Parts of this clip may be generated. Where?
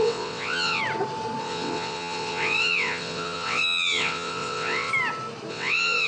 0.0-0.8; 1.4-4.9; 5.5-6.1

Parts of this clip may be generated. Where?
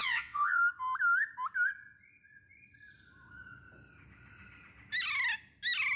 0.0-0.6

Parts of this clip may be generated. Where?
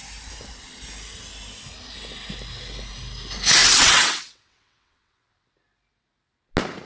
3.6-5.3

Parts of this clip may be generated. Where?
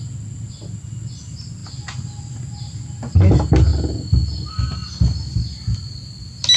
none